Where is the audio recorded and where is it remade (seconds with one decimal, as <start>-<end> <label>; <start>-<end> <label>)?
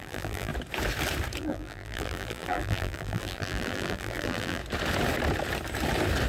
0.0-0.5 remade; 0.5-1.4 recorded; 1.4-4.6 remade; 4.6-6.3 recorded